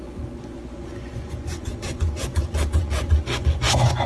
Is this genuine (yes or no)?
no